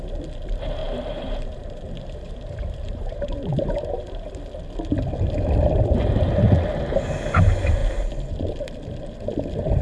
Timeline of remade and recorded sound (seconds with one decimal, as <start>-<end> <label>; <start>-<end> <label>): 0.0-0.8 recorded; 0.8-4.3 remade; 4.3-9.8 recorded